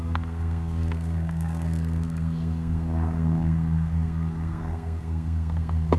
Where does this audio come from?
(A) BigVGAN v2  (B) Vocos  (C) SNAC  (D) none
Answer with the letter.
C